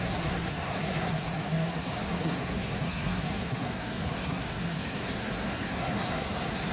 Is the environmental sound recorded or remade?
remade